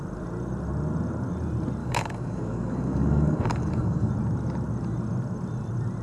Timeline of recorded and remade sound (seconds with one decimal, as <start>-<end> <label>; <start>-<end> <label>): 0.0-1.8 recorded; 1.8-4.1 remade; 4.1-6.0 recorded